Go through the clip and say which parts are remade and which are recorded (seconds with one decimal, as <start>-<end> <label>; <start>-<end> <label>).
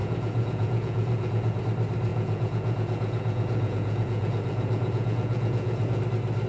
0.0-1.6 remade; 1.6-2.1 recorded; 2.1-6.0 remade; 6.0-6.5 recorded